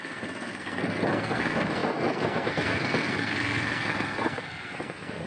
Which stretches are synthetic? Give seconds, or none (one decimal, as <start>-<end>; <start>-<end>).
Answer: 0.0-5.3